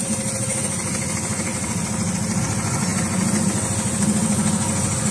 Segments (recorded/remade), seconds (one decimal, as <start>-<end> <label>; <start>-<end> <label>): 0.0-1.5 remade; 1.5-2.4 recorded; 2.4-5.1 remade